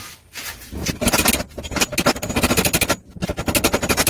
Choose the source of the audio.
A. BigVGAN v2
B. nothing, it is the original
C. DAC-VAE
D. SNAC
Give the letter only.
B